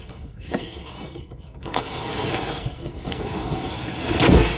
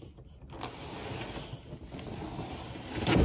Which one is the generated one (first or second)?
first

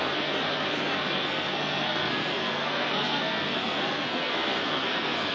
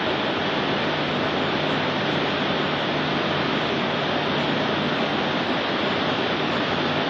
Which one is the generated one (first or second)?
first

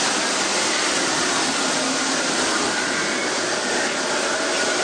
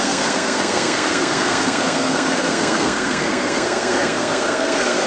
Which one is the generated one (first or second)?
second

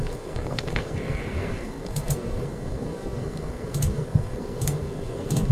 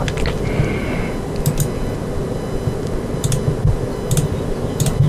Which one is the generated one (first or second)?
first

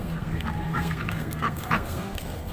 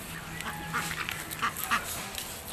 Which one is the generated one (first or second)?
first